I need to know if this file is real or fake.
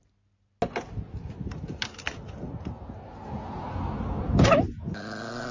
real